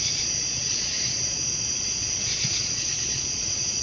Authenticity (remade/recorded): remade